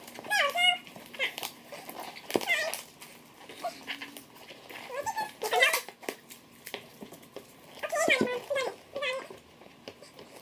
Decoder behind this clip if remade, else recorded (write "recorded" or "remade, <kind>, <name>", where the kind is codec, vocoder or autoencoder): recorded